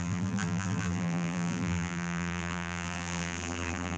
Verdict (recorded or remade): remade